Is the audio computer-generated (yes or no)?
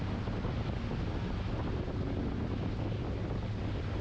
no